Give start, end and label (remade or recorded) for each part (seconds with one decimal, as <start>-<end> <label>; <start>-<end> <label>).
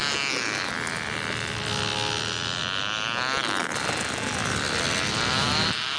0.0-6.0 recorded